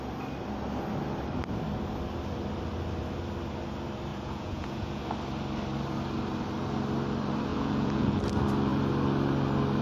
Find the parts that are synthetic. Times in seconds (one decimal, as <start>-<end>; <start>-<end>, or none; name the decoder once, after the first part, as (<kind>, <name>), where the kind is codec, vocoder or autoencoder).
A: 4.1-5.0 (vocoder, Vocos); 7.5-8.2